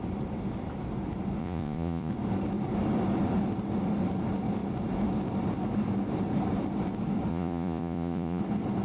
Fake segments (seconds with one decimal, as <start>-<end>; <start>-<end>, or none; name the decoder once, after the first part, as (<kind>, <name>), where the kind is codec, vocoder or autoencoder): 1.4-2.1 (vocoder, Vocos); 7.3-8.4